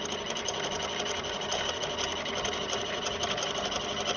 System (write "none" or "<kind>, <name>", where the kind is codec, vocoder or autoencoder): none